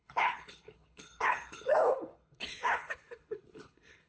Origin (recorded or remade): remade